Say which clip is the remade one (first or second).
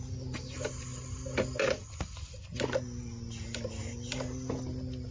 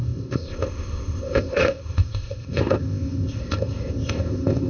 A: second